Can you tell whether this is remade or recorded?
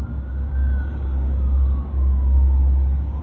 remade